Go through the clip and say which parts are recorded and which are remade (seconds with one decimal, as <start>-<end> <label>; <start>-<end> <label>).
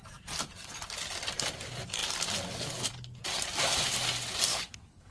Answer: 0.0-4.5 recorded; 4.5-5.1 remade